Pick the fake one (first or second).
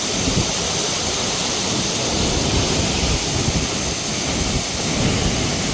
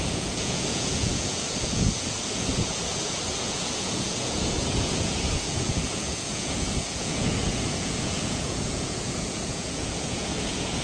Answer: second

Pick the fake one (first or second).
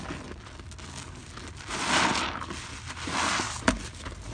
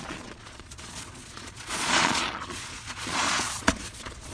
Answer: second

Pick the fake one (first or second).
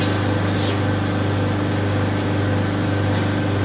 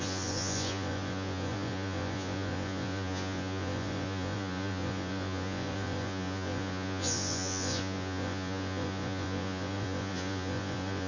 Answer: second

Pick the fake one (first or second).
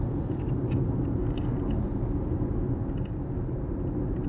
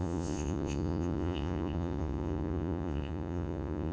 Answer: second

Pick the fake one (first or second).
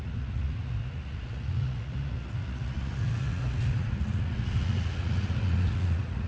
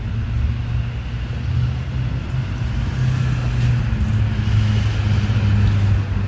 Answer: first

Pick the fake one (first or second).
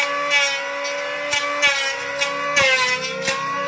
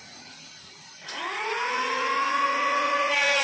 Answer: second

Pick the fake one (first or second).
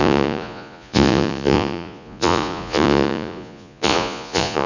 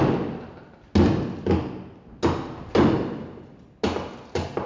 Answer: first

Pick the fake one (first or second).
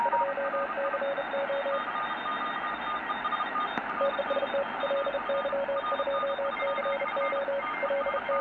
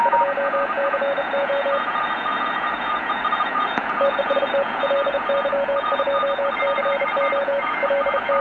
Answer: second